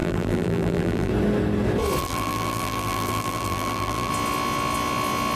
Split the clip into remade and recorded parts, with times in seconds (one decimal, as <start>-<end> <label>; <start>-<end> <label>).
0.0-1.1 remade; 1.1-2.0 recorded; 2.0-4.1 remade; 4.1-5.4 recorded